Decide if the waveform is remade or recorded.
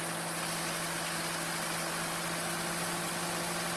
recorded